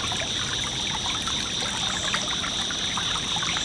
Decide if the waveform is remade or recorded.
recorded